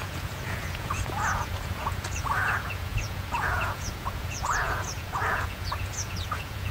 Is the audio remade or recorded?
remade